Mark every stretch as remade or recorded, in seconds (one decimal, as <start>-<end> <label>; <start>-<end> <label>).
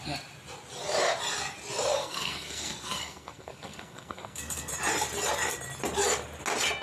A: 0.0-2.0 recorded; 2.0-4.7 remade; 4.7-6.8 recorded